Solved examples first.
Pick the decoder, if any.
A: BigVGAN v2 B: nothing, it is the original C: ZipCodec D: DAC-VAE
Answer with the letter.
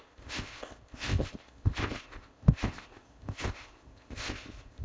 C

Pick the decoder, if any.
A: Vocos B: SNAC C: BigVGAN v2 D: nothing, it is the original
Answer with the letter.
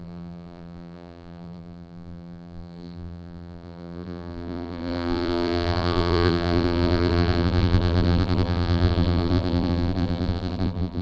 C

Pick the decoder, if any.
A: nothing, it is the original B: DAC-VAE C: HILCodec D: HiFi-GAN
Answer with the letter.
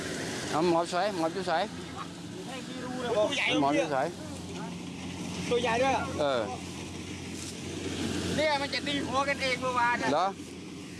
A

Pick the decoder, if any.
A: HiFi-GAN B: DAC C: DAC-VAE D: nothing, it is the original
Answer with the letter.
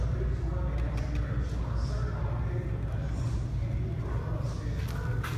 D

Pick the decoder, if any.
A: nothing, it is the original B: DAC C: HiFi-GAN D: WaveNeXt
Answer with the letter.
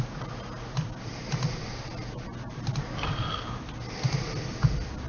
A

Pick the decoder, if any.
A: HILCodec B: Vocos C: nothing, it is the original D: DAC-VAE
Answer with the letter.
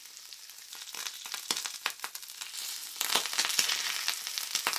C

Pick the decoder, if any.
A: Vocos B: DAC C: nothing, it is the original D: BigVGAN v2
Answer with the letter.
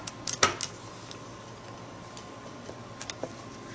C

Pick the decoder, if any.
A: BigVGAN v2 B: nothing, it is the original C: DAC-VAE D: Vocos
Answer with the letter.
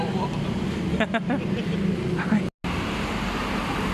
B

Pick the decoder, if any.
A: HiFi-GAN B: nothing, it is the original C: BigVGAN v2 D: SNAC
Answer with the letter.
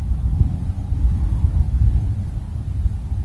B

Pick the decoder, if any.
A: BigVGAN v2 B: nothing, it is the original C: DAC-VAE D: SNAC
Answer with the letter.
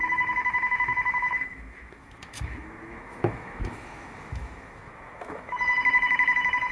C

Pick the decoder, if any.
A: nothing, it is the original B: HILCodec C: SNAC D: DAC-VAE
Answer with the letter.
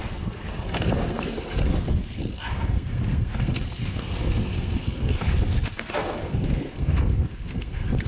C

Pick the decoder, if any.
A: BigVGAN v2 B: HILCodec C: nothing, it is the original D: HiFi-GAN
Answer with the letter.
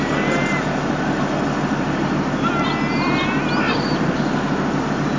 C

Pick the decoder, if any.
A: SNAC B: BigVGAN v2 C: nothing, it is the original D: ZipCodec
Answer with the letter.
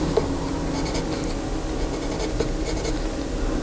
C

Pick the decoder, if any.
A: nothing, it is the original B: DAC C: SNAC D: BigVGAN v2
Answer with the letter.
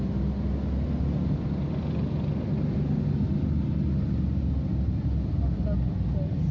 A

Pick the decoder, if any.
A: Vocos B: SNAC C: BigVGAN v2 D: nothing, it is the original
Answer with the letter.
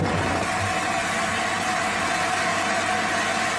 D